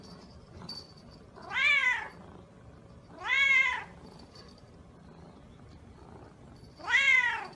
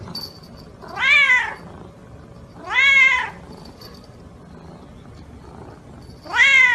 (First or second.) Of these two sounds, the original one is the second